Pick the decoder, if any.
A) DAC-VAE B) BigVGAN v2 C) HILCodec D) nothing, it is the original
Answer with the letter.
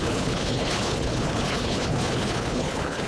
C